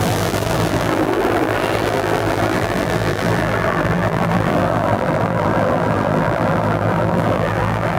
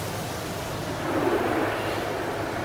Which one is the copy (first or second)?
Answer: first